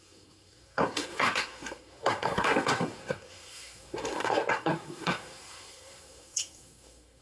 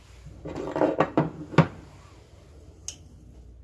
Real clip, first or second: second